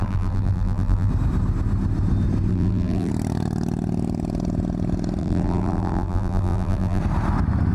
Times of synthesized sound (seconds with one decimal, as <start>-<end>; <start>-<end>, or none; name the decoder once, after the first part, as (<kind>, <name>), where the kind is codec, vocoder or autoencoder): 0.0-1.1 (vocoder, BigVGAN v2); 2.5-3.1; 5.2-7.0

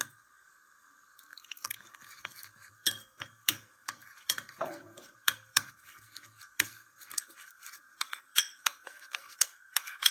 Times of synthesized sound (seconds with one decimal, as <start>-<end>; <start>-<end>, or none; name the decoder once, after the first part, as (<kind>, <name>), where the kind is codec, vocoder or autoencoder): 0.0-10.1 (codec, SNAC)

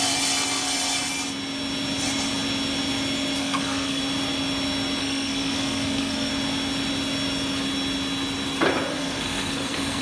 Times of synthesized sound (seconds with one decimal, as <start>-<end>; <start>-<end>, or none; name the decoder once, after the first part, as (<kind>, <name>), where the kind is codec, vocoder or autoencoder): 3.4-4.0 (codec, SNAC); 5.0-6.3; 8.9-10.0

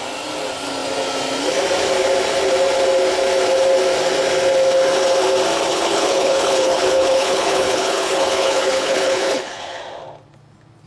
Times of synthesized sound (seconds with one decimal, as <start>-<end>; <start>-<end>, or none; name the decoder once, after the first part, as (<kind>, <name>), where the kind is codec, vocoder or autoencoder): 5.7-9.8 (codec, HILCodec)

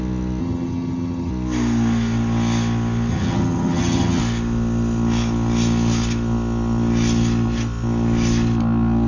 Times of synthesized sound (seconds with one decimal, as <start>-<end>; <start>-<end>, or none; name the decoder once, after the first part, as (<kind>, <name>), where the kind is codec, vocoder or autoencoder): 0.4-1.3 (vocoder, HiFi-GAN); 3.1-4.2